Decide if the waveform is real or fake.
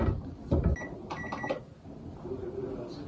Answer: real